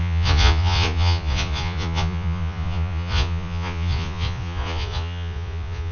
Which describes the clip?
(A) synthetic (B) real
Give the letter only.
A